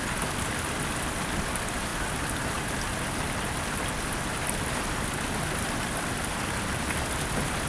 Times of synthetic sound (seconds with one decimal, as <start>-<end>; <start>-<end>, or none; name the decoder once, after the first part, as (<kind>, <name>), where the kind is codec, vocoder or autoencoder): none